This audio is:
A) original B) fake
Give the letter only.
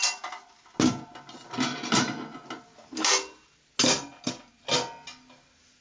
A